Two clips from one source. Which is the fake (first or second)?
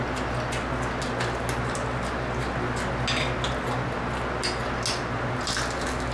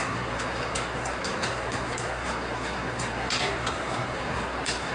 second